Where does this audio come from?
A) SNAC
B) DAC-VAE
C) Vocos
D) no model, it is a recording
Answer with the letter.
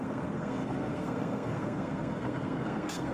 A